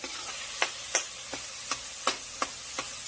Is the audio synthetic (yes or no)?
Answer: no